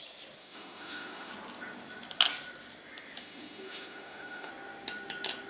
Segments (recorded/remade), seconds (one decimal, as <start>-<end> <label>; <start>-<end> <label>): 0.0-0.4 recorded; 0.4-1.3 remade; 1.3-3.2 recorded; 3.2-4.5 remade; 4.5-5.5 recorded